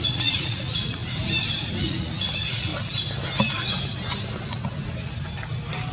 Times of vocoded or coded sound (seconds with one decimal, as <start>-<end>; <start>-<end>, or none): 0.0-1.0; 1.8-2.7

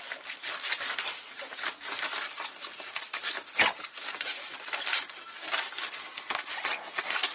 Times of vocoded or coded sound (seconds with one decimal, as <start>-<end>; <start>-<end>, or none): none